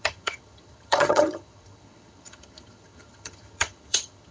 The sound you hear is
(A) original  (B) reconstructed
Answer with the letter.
B